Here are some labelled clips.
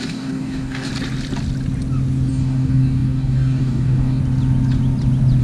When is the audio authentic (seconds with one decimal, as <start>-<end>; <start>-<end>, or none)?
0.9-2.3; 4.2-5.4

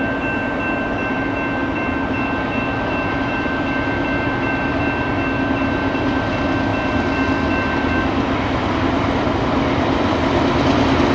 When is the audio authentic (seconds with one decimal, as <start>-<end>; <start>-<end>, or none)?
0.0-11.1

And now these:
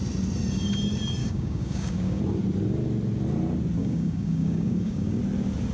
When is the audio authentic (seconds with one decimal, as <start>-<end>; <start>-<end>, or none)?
0.0-1.2; 2.2-3.8; 5.2-5.7

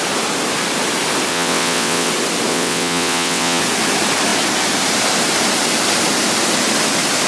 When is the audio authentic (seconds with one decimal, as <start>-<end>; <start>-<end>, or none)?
0.0-1.3; 2.1-2.5; 3.6-7.3